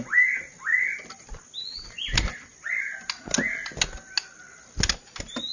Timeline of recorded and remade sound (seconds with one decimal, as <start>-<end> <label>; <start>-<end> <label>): 0.0-5.5 recorded